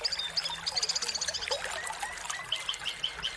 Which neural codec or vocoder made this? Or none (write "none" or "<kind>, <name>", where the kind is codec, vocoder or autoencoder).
none